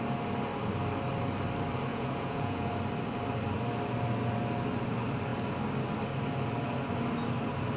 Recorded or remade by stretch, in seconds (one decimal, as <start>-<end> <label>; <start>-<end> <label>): 0.0-1.9 recorded; 1.9-2.7 remade; 2.7-7.8 recorded